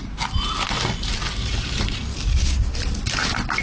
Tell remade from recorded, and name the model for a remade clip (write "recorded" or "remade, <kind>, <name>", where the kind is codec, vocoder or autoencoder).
recorded